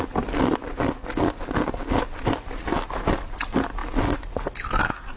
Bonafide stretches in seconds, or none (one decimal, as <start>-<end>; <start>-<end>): 0.0-5.2